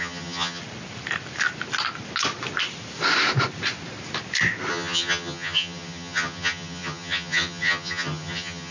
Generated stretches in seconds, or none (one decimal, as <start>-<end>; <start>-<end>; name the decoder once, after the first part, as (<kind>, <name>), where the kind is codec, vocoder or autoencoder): 0.0-0.6 (vocoder, HiFi-GAN); 4.7-8.7